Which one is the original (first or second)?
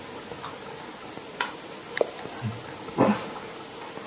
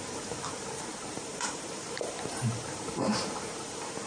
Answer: first